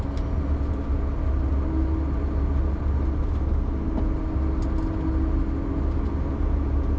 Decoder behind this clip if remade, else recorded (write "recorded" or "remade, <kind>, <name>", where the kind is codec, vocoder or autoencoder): recorded